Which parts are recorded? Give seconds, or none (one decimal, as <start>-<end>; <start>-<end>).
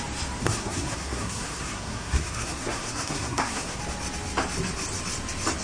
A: 0.0-0.4; 3.8-5.6